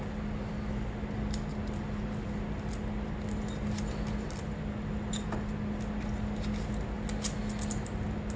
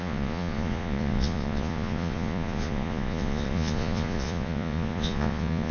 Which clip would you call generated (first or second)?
second